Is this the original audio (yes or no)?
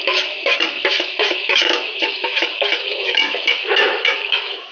no